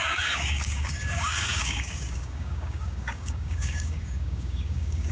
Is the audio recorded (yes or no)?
no